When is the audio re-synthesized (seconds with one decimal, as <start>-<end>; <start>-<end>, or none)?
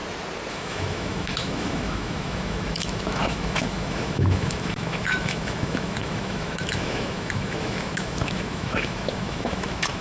0.5-10.0